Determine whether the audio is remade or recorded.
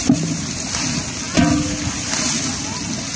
recorded